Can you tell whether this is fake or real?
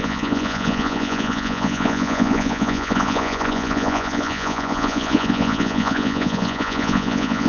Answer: fake